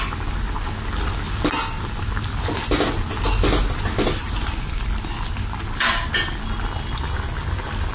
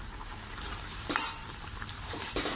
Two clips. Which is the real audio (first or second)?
first